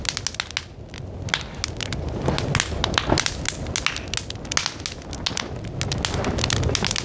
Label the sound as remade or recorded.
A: recorded